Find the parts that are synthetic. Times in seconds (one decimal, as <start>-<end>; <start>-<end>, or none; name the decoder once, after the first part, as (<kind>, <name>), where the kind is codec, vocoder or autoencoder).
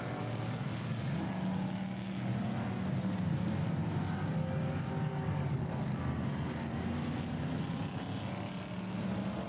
5.1-6.0 (codec, DAC)